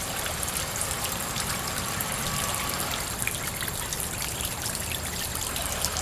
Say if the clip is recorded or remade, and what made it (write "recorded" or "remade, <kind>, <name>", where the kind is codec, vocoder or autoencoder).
recorded